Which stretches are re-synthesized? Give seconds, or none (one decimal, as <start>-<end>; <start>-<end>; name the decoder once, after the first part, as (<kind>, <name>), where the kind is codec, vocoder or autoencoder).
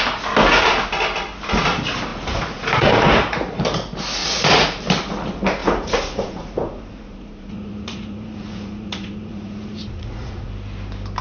2.1-3.6 (vocoder, Vocos); 4.2-4.8; 5.6-10.5